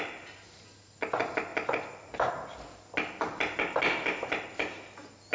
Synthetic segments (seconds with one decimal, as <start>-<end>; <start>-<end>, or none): none